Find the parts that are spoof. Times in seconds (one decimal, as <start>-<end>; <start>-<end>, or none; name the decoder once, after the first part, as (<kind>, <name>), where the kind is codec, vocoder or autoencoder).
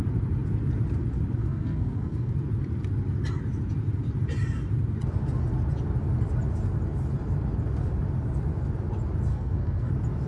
1.4-2.3 (codec, SNAC); 9.3-9.9